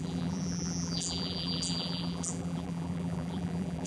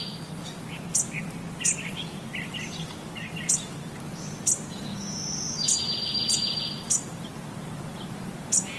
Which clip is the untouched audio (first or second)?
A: second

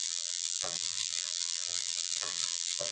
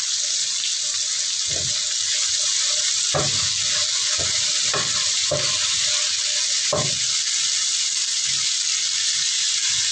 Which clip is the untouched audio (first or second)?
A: second